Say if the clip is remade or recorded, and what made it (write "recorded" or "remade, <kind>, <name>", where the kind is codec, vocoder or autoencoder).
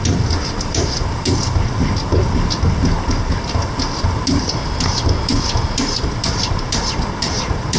remade, vocoder, BigVGAN v2